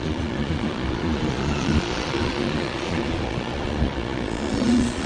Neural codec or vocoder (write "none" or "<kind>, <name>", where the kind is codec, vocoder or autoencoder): vocoder, Vocos